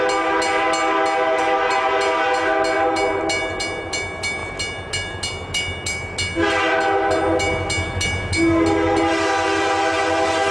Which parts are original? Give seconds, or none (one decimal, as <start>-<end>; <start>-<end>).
0.0-10.5